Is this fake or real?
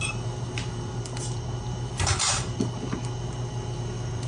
fake